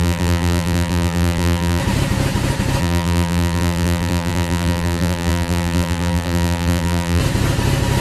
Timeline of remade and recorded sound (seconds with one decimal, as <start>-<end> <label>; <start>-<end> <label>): 0.0-1.8 remade; 1.8-2.8 recorded; 2.8-7.2 remade; 7.2-8.0 recorded